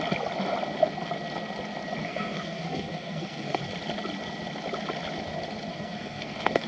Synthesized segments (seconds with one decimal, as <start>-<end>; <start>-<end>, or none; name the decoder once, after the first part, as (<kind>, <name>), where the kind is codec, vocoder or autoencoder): 2.0-3.6 (codec, SNAC); 5.7-6.7

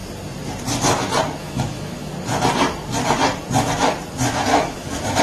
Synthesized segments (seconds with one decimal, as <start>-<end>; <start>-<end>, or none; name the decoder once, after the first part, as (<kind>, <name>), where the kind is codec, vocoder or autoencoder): 1.4-2.1 (autoencoder, DAC-VAE); 4.5-5.2

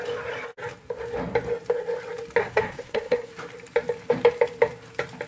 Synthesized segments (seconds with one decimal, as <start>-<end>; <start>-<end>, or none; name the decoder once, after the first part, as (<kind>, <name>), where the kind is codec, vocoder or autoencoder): 2.4-3.3 (codec, SNAC)

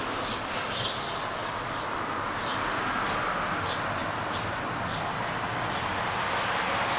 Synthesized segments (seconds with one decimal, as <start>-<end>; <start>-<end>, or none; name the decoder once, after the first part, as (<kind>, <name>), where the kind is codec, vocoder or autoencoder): 1.4-2.0 (vocoder, BigVGAN v2); 4.0-4.6

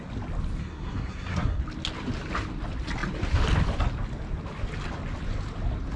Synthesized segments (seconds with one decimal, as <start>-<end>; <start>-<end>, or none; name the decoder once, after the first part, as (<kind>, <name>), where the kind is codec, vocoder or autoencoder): 0.6-1.6 (codec, SNAC)

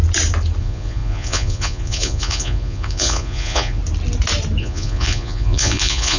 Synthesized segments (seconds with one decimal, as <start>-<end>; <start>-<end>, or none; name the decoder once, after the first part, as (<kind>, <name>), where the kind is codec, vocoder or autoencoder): 0.6-3.8 (vocoder, Vocos); 4.6-6.2